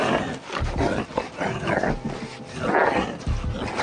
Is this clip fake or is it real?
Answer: real